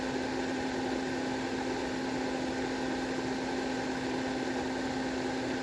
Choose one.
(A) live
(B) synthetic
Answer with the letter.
A